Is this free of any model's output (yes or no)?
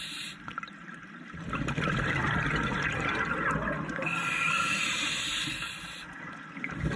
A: yes